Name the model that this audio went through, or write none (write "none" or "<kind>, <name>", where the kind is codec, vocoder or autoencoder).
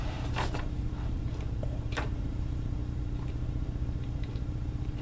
vocoder, BigVGAN v2